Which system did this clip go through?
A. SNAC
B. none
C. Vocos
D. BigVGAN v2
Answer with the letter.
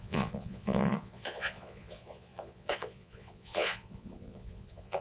C